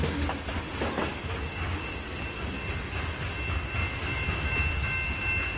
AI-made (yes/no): no